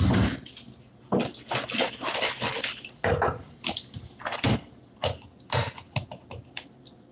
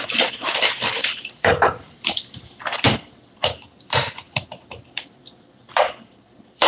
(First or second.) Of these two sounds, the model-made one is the second